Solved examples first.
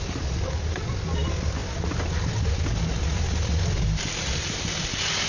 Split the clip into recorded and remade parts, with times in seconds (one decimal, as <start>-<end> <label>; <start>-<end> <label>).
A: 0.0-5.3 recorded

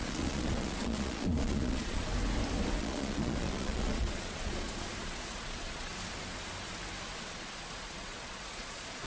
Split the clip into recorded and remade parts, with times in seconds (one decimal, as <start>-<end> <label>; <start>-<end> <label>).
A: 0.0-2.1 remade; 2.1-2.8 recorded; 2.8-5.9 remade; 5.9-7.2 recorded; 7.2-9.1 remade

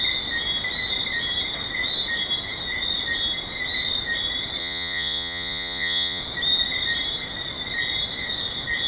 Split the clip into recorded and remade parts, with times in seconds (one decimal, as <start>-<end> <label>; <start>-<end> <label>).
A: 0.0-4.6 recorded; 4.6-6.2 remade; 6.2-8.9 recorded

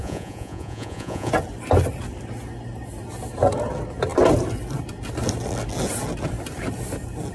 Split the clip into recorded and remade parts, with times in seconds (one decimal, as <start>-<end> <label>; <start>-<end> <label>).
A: 0.0-1.3 remade; 1.3-7.3 recorded